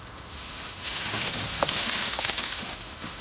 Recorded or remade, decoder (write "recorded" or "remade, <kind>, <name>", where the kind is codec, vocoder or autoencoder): remade, autoencoder, DAC-VAE